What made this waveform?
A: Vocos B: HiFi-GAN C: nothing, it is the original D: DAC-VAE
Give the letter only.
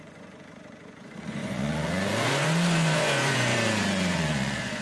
A